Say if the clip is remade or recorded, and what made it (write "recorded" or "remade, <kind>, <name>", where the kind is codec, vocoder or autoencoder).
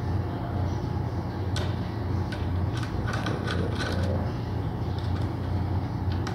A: recorded